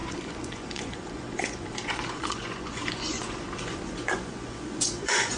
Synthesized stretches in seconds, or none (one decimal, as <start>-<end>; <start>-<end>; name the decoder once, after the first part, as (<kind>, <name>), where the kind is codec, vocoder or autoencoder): 0.0-5.4 (vocoder, Vocos)